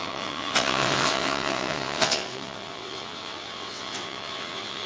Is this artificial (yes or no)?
yes